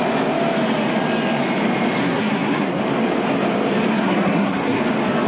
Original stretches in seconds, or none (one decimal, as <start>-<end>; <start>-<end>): 0.0-2.0; 2.8-3.9; 4.8-5.3